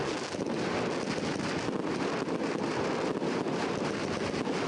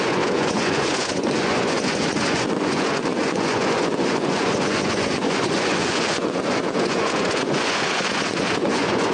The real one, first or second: first